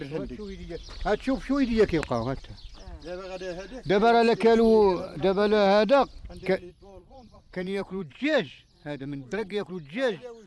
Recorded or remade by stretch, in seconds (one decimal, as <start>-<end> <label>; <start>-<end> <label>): 0.0-6.7 recorded; 6.7-9.7 remade; 9.7-10.5 recorded